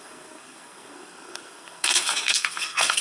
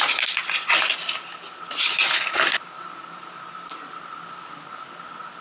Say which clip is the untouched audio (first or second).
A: second